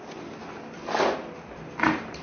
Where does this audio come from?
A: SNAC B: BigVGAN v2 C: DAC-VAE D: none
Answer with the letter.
D